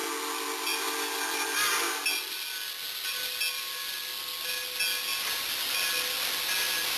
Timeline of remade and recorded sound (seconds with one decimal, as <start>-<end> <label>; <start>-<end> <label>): 0.0-7.0 recorded